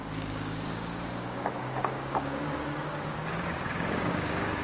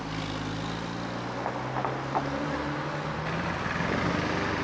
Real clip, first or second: second